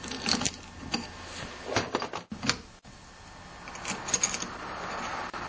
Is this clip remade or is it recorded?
recorded